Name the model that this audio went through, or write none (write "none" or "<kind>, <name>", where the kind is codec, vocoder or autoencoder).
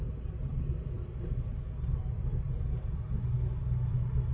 none